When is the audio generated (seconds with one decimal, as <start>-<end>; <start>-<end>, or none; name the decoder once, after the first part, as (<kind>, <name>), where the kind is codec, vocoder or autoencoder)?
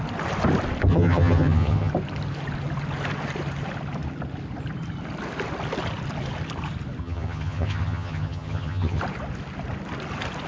0.9-1.9 (vocoder, HiFi-GAN); 7.0-9.0